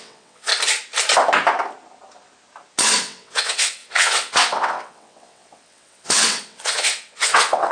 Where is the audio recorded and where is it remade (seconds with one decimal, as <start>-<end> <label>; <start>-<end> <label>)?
0.0-0.5 remade; 0.5-3.0 recorded; 3.0-7.7 remade